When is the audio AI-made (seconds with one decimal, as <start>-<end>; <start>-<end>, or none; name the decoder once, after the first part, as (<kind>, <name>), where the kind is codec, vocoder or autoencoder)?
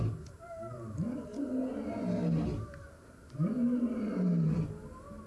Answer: none